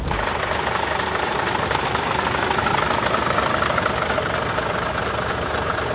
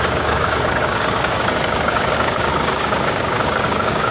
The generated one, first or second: second